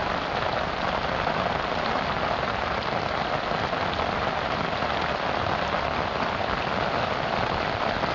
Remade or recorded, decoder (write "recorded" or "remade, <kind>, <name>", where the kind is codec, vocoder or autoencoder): recorded